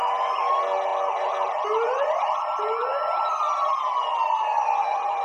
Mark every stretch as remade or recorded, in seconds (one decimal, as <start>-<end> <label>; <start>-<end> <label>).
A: 0.0-5.2 recorded